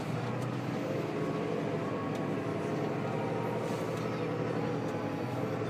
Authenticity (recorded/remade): recorded